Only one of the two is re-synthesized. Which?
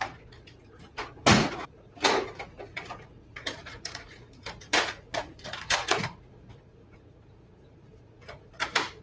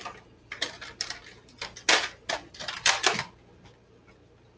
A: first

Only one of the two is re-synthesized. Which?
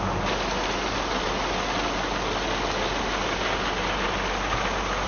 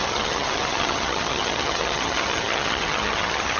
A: second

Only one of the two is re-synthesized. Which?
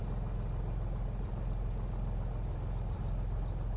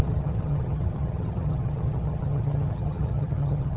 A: second